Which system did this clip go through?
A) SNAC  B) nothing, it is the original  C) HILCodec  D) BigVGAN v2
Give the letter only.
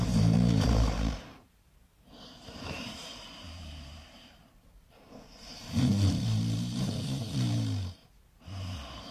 D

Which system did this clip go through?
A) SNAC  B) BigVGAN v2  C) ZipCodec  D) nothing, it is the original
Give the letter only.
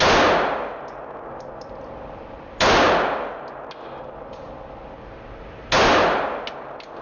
D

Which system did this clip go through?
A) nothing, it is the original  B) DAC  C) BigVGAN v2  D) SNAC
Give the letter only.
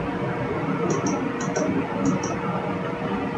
A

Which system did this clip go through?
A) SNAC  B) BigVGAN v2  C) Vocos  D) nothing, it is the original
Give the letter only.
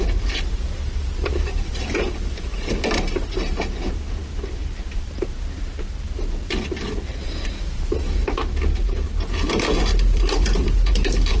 B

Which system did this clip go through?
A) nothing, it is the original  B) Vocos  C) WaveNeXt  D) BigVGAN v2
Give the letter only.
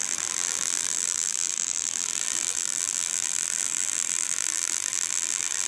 D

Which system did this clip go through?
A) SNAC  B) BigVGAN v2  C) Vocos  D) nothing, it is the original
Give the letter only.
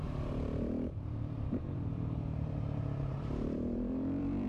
B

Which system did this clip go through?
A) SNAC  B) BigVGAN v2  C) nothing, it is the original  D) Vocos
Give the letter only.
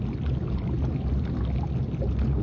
C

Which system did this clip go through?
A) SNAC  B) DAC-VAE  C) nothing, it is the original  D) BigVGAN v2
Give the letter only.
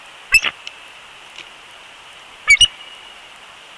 C